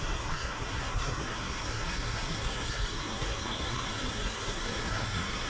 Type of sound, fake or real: fake